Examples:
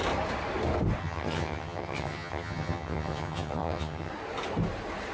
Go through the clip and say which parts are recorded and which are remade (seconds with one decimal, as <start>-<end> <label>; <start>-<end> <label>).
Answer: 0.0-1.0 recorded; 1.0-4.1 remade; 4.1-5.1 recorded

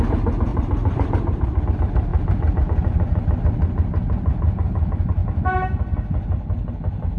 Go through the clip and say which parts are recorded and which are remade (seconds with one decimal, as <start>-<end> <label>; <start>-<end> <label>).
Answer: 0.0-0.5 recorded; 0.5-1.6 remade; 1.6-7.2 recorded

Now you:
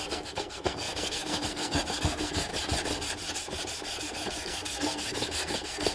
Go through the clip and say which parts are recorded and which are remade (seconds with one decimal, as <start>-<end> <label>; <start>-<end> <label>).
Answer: 0.0-2.5 remade; 2.5-4.0 recorded; 4.0-5.9 remade

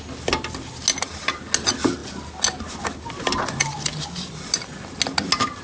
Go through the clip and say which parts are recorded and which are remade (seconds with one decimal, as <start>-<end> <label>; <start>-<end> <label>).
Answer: 0.0-5.6 recorded

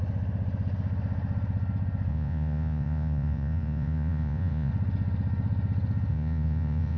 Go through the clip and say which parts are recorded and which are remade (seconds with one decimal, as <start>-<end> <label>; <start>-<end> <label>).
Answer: 0.0-2.1 recorded; 2.1-4.7 remade; 4.7-6.1 recorded; 6.1-7.0 remade

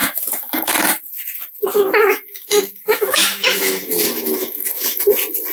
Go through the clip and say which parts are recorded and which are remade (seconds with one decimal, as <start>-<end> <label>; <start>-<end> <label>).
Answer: 0.0-1.1 remade; 1.1-1.7 recorded; 1.7-5.0 remade; 5.0-5.5 recorded

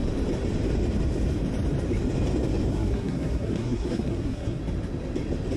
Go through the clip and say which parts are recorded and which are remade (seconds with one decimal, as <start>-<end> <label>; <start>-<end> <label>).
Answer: 0.0-2.7 recorded; 2.7-4.6 remade; 4.6-5.6 recorded